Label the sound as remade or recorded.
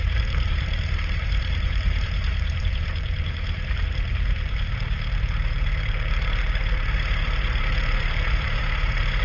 remade